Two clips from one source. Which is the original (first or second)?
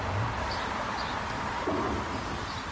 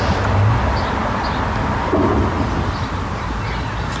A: second